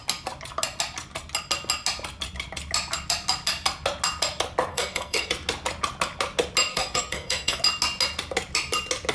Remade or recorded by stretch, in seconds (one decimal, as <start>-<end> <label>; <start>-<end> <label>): 0.0-4.7 recorded; 4.7-5.3 remade; 5.3-6.7 recorded; 6.7-7.6 remade; 7.6-9.1 recorded